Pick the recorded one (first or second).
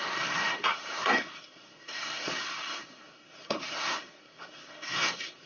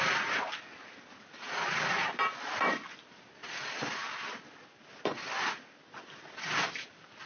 second